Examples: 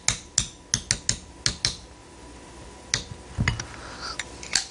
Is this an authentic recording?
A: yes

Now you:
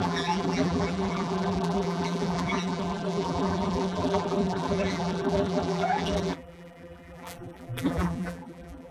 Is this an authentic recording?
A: no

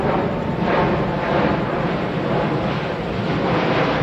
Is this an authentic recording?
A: no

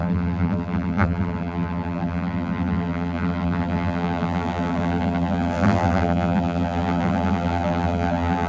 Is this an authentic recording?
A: no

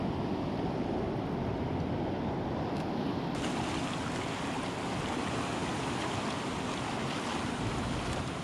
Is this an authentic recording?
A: yes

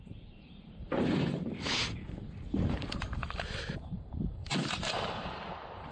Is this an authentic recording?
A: no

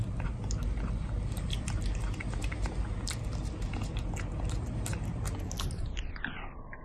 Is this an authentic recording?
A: yes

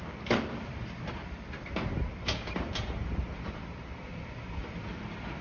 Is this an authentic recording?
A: no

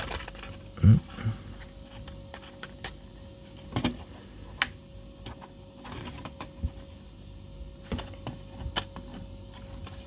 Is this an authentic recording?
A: yes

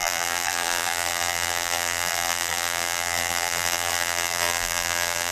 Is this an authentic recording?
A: no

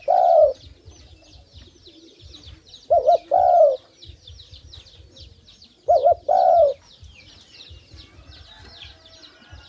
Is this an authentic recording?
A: yes